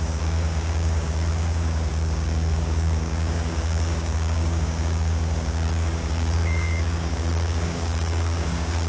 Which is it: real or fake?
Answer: fake